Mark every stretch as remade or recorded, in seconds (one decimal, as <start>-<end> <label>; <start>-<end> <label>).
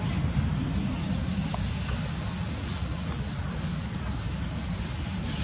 0.0-2.6 recorded; 2.6-3.1 remade; 3.1-5.4 recorded